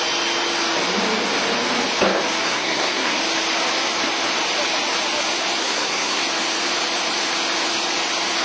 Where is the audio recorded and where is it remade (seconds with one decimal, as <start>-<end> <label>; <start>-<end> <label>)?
0.0-2.4 recorded; 2.4-3.2 remade; 3.2-5.6 recorded; 5.6-6.2 remade; 6.2-8.4 recorded